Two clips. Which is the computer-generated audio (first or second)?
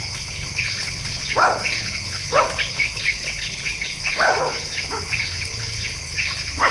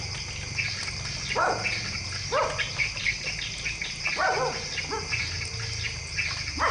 first